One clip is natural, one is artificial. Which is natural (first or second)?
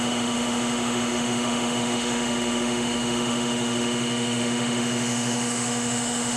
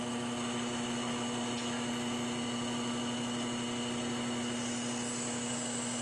second